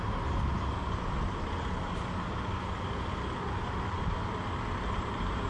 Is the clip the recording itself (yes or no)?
yes